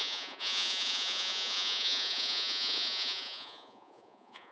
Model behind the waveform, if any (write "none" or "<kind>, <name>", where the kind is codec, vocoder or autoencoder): vocoder, Vocos